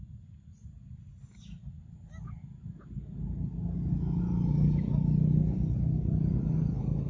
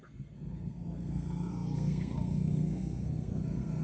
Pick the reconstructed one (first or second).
second